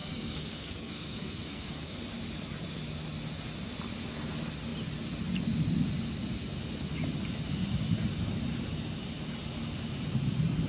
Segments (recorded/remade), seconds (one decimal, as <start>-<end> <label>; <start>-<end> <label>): 0.0-2.0 remade; 2.0-10.7 recorded